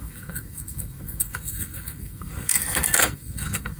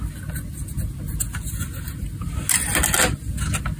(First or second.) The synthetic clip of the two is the first